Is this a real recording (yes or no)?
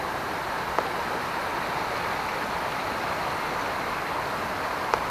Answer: yes